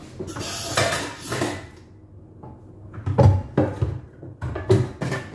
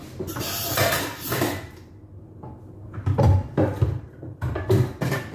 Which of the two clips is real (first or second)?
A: first